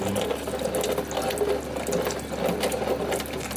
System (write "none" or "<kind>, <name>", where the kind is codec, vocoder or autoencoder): none